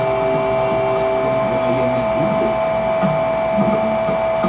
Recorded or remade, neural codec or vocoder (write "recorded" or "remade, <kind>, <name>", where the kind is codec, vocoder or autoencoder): recorded